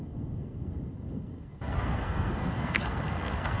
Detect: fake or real fake